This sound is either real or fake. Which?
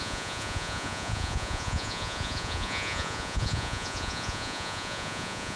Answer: fake